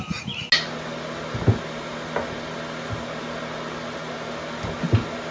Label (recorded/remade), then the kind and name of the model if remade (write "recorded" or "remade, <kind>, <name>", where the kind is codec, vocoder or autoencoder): recorded